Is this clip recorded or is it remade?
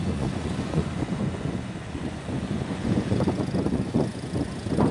remade